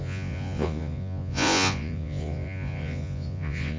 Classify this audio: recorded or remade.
remade